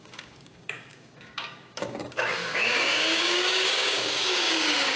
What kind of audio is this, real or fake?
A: fake